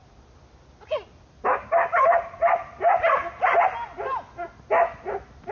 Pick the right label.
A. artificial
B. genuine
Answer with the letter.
B